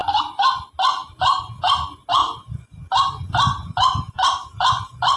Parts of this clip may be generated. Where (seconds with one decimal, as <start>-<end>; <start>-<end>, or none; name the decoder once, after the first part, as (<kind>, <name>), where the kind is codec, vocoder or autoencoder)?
none